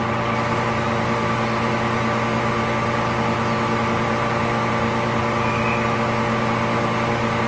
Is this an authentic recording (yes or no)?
yes